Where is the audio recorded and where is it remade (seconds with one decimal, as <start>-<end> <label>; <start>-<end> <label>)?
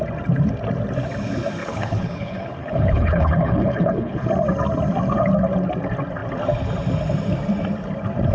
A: 0.0-1.6 recorded; 1.6-4.3 remade; 4.3-8.3 recorded